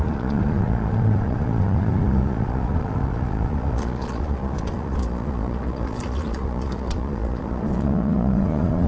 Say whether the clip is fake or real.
fake